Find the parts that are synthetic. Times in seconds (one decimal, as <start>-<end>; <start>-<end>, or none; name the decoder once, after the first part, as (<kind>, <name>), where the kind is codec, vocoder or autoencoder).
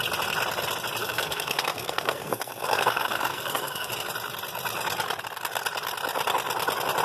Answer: 1.0-3.9 (codec, SNAC)